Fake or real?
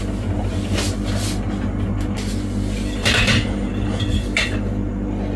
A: real